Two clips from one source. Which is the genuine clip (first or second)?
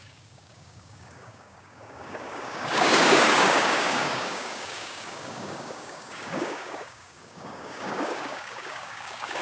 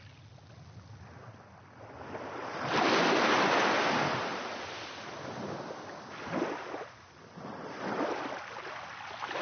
second